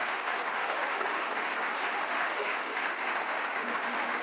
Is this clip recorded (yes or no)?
no